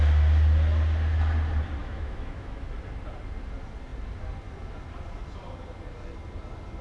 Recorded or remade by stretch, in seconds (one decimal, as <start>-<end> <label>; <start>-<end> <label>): 0.0-1.8 recorded; 1.8-2.7 remade; 2.7-6.8 recorded